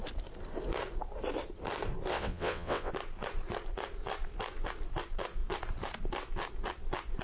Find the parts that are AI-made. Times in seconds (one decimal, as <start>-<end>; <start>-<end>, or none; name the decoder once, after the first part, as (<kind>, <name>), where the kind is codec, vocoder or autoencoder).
2.1-2.9 (vocoder, WaveNeXt)